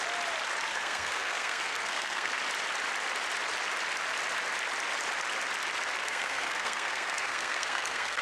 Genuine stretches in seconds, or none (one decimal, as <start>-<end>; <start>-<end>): 0.0-0.7; 2.4-6.0

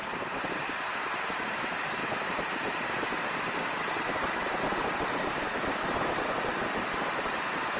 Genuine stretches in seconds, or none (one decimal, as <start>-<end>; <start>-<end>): 0.0-7.8

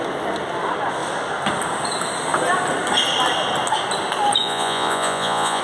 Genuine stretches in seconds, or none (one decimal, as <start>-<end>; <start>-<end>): 0.0-4.4